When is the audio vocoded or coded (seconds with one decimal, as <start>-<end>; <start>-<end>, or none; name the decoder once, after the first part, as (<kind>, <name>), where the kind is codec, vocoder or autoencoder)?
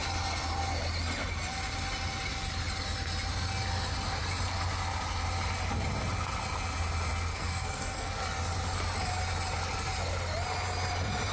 7.3-8.1 (codec, SNAC)